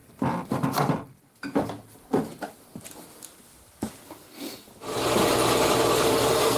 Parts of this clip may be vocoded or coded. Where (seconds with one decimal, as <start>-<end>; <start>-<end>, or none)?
4.0-4.7; 6.1-6.6